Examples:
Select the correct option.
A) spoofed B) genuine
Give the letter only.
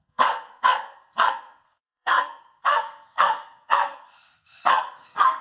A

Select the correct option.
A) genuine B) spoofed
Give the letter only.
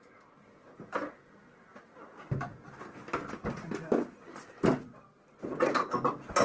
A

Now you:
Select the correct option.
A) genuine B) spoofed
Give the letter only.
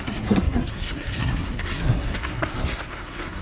B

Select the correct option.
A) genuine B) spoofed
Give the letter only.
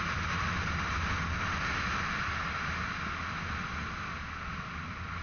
A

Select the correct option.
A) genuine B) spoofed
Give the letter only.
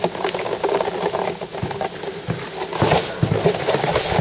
A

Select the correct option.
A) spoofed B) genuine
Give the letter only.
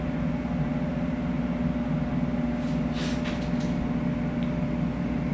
B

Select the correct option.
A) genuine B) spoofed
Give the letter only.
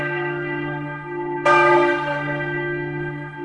B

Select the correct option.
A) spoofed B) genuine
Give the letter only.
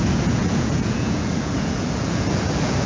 A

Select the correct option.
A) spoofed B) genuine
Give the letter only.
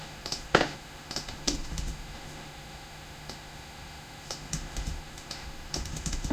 A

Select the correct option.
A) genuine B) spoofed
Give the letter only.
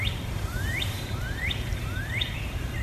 B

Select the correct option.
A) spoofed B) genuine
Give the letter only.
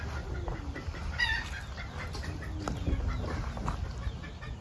B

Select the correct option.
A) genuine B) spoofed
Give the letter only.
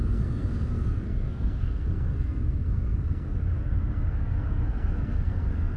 B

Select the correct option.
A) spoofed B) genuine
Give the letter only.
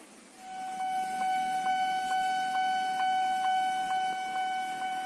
B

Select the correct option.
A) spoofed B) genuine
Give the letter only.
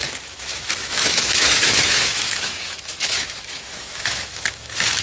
A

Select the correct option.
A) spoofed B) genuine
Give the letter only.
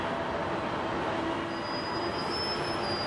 B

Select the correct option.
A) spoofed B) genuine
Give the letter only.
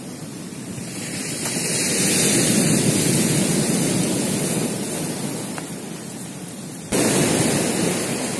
B